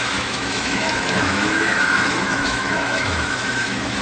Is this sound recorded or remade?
remade